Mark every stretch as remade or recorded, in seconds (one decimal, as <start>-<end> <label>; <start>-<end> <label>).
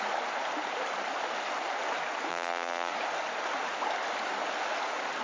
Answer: 0.0-2.3 recorded; 2.3-2.9 remade; 2.9-5.2 recorded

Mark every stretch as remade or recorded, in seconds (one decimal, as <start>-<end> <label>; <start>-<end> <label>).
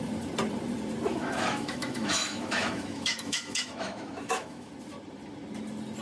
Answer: 0.0-1.1 recorded; 1.1-4.7 remade; 4.7-6.0 recorded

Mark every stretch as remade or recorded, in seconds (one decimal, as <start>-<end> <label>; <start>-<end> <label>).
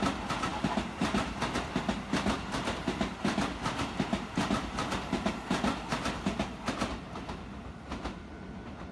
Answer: 0.0-8.9 recorded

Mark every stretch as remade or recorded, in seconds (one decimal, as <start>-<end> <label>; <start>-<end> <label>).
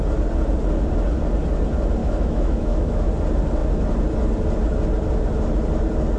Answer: 0.0-2.0 recorded; 2.0-3.1 remade; 3.1-6.2 recorded